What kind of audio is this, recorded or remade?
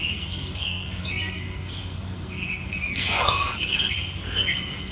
remade